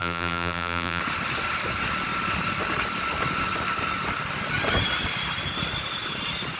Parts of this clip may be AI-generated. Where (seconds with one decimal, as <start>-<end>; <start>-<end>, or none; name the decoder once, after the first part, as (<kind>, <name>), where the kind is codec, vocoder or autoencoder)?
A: 0.0-1.0 (vocoder, BigVGAN v2)